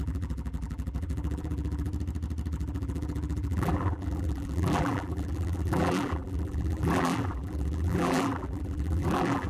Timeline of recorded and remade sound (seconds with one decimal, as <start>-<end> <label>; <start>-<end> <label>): 0.0-1.9 remade; 1.9-2.5 recorded; 2.5-9.5 remade